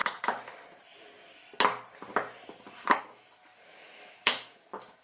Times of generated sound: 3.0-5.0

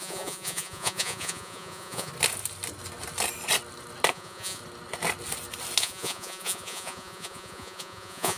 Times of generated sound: 0.0-2.1; 4.1-4.6; 5.8-8.4

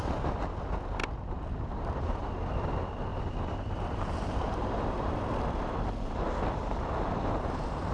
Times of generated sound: 1.0-1.7; 3.1-5.2

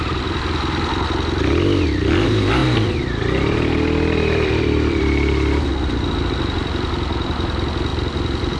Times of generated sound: 2.6-5.6; 7.9-8.6

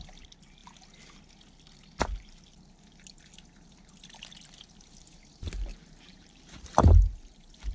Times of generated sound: 5.7-6.8

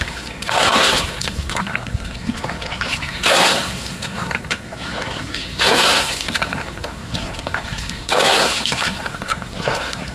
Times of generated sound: 0.0-10.1

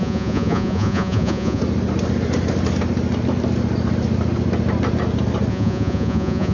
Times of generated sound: 0.0-1.6; 5.5-6.5

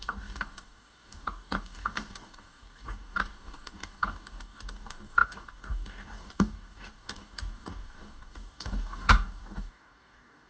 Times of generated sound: 0.0-10.5